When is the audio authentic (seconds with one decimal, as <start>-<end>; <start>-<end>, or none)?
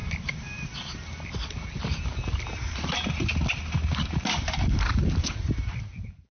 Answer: 0.0-6.3